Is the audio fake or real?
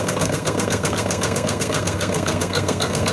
fake